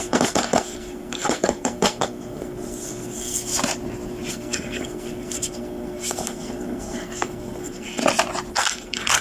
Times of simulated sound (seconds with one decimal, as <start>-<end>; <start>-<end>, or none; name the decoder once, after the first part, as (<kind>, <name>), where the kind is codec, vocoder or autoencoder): 0.0-3.5 (codec, SNAC); 4.3-8.0; 8.5-9.2

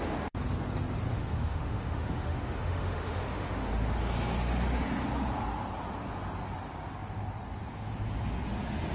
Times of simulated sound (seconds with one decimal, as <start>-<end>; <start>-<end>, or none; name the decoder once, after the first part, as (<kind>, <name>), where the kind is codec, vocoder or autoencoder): 1.1-3.7 (autoencoder, DAC-VAE)

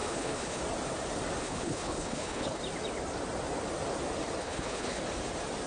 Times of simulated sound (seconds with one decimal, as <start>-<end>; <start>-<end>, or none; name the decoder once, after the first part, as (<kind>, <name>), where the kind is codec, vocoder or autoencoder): 0.0-0.6 (codec, HILCodec); 1.4-2.6; 4.4-5.0

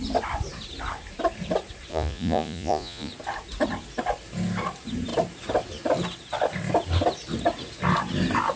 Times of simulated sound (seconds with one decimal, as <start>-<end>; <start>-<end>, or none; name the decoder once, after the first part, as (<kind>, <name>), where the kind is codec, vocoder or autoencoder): 1.9-3.1 (vocoder, Vocos)

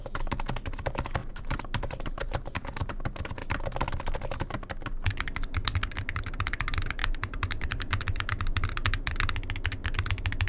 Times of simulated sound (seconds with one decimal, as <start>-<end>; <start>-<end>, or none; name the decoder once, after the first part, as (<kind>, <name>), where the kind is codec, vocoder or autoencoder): 1.2-2.9 (vocoder, BigVGAN v2); 7.0-8.4

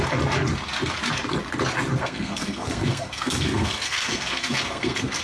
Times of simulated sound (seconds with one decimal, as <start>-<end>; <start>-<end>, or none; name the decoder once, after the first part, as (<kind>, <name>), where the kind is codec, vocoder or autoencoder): 2.0-5.2 (codec, SNAC)

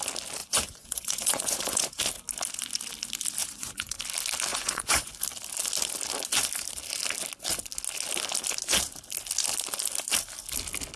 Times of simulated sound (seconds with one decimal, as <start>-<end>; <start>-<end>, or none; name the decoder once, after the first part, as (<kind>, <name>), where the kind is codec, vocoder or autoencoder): 0.4-2.0 (vocoder, Vocos); 3.4-4.0; 4.5-5.1